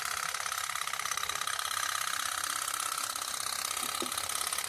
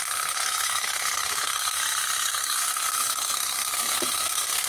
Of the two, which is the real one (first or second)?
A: first